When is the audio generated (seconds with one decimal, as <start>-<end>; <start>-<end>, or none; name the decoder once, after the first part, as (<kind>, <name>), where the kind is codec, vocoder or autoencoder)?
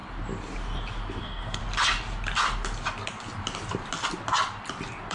1.2-1.6 (codec, SNAC)